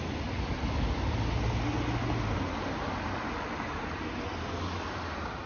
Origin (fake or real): real